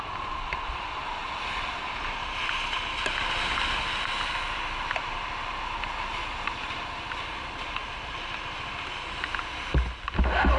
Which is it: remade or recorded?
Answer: recorded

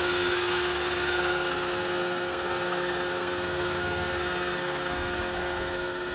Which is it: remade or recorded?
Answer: remade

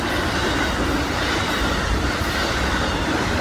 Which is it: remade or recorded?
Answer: recorded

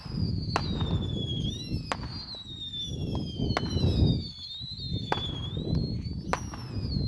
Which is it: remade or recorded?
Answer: recorded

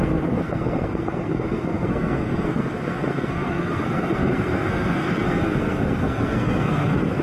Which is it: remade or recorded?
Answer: remade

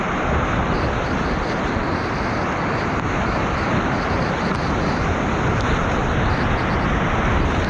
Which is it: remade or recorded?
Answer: recorded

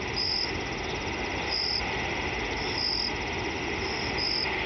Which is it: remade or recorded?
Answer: recorded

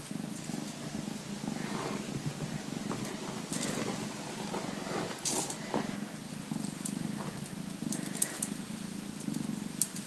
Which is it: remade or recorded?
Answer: recorded